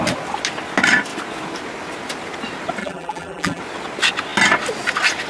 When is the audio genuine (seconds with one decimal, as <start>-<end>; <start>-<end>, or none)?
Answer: 0.0-2.8; 3.6-5.3